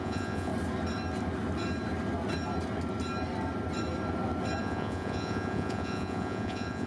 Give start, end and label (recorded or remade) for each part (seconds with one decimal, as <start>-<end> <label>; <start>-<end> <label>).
0.0-0.5 remade; 0.5-4.6 recorded; 4.6-6.9 remade